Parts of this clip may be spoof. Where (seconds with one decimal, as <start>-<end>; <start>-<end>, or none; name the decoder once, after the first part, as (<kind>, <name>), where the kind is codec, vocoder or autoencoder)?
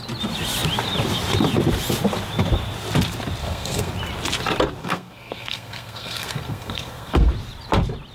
3.4-3.9 (codec, SNAC); 4.8-7.3